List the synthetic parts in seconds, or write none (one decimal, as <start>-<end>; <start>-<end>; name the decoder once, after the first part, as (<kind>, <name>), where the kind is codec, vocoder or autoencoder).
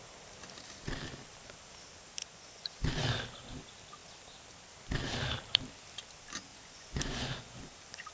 2.2-2.7 (vocoder, Vocos); 6.5-7.6